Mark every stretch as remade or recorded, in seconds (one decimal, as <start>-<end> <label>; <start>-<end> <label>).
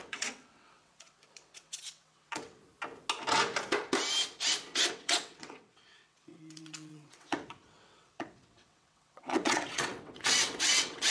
0.0-2.6 remade; 2.6-4.9 recorded; 4.9-11.1 remade